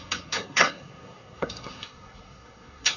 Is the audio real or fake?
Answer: fake